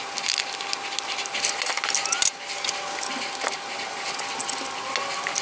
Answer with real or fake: real